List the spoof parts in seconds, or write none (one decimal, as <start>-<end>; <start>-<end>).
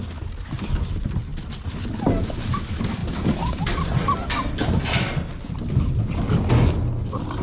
3.0-6.0